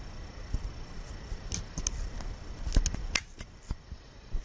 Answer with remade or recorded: recorded